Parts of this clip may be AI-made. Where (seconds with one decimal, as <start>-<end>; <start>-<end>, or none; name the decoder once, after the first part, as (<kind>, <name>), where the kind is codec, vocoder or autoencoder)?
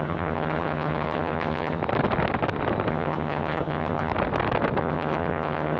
0.0-1.8 (vocoder, HiFi-GAN); 2.9-4.1; 4.8-5.8